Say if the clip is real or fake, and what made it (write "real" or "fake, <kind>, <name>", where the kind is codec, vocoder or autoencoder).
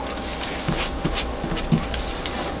real